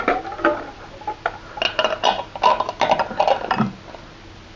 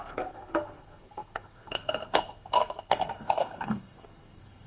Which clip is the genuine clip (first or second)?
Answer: first